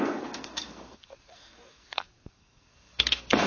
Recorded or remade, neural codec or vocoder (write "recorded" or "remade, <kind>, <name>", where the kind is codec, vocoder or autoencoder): remade, codec, SNAC